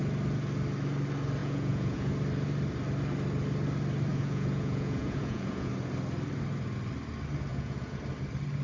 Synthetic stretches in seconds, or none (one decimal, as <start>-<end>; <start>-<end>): 1.4-2.1; 4.1-5.7; 7.5-8.0